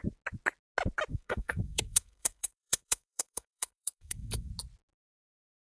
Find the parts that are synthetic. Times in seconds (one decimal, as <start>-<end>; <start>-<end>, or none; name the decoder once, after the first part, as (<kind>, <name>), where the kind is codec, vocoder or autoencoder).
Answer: 1.1-4.5 (codec, SNAC)